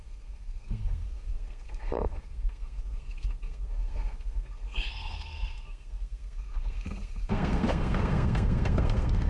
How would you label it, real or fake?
fake